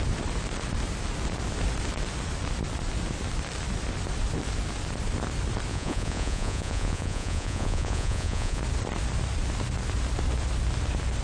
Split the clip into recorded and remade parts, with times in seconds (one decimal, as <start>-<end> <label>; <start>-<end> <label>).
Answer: 0.0-5.7 recorded; 5.7-8.6 remade; 8.6-11.2 recorded